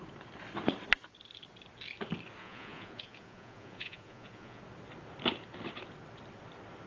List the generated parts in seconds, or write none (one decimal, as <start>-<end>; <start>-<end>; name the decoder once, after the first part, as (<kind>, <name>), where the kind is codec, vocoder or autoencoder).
2.4-4.6 (vocoder, Vocos)